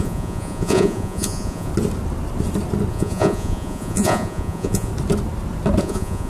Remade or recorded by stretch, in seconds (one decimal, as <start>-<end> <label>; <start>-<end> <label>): 0.0-1.7 remade; 1.7-2.9 recorded; 2.9-4.9 remade; 4.9-5.8 recorded; 5.8-6.3 remade